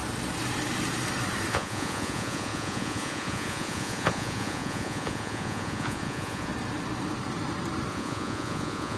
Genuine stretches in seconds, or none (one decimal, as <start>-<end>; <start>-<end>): 0.0-1.5; 6.5-7.9